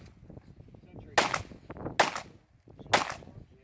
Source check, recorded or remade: recorded